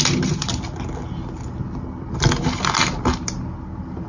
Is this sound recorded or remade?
recorded